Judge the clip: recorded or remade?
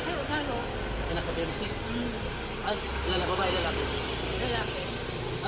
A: recorded